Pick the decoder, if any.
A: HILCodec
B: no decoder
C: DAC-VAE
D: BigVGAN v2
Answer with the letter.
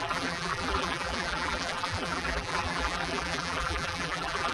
D